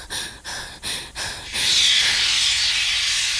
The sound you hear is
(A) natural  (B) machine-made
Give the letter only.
A